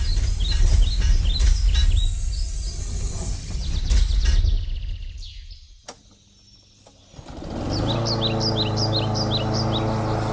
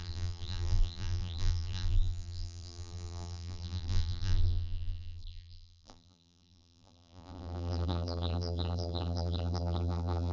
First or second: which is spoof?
second